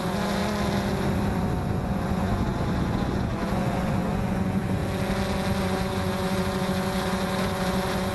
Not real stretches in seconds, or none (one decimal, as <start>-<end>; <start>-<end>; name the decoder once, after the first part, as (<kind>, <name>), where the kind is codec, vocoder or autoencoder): 0.0-0.4 (vocoder, Vocos); 1.6-4.8; 5.6-8.1